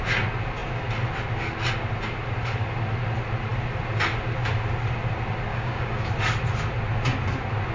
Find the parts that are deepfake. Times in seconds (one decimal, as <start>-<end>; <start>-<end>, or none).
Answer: 5.5-6.1